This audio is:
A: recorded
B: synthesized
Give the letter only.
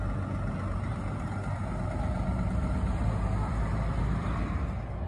A